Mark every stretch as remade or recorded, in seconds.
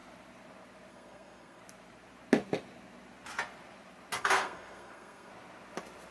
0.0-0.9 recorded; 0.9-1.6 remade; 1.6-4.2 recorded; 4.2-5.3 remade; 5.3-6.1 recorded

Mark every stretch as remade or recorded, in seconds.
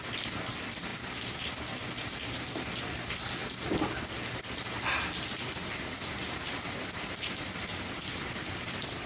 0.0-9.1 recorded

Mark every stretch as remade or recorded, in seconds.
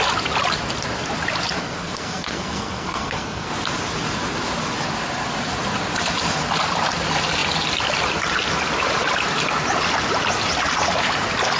0.0-1.6 recorded; 1.6-3.5 remade; 3.5-11.6 recorded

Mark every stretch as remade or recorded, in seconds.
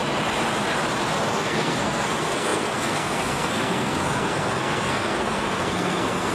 0.0-1.3 recorded; 1.3-6.3 remade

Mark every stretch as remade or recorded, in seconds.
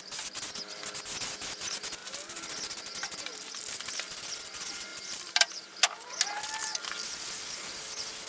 0.0-4.9 recorded; 4.9-6.3 remade; 6.3-8.3 recorded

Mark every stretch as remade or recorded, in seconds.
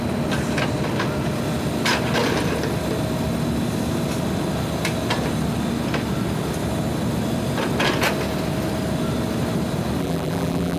0.0-10.0 recorded; 10.0-10.8 remade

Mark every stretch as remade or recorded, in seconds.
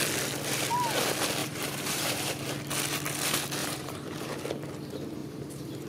0.0-1.4 recorded; 1.4-2.4 remade; 2.4-3.6 recorded; 3.6-4.3 remade; 4.3-5.2 recorded; 5.2-5.9 remade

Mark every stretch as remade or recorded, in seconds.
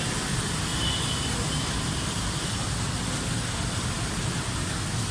0.0-5.1 recorded